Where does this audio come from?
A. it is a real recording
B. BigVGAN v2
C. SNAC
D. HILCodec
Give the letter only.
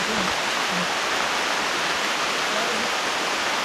A